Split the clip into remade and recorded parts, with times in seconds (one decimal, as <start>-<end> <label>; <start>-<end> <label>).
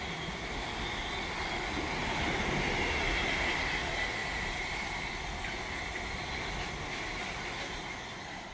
0.0-8.5 recorded